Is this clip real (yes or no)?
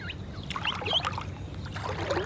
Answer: yes